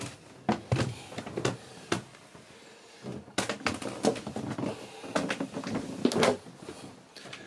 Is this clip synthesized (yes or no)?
no